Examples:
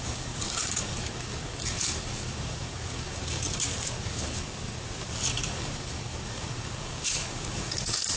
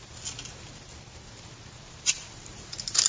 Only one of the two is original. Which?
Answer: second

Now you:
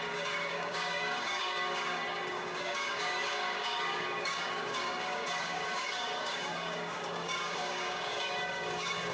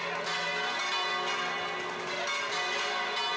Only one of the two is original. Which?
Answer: second